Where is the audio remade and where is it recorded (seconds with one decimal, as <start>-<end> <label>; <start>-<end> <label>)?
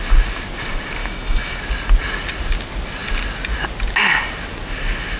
0.0-1.0 recorded; 1.0-1.6 remade; 1.6-5.2 recorded